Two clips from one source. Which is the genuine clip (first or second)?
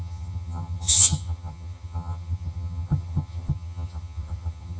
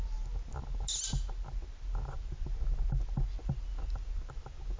second